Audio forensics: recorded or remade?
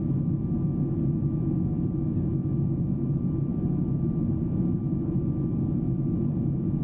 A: recorded